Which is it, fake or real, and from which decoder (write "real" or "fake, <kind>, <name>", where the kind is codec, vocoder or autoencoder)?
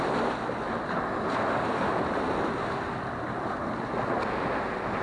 real